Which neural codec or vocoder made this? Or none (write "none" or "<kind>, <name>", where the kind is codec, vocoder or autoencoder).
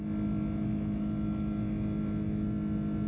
none